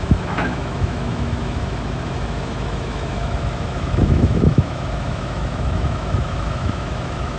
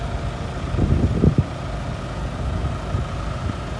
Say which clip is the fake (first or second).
first